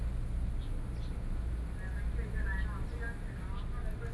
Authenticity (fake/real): real